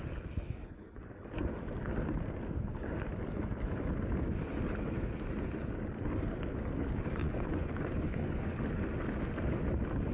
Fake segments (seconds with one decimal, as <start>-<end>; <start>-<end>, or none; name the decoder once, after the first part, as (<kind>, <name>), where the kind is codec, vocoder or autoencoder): 0.6-1.1 (vocoder, Vocos); 7.2-8.5